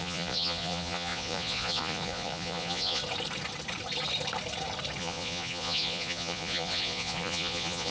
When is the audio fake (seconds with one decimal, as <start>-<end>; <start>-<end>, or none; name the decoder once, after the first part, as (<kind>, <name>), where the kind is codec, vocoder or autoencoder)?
0.0-3.0 (vocoder, Vocos); 5.0-7.9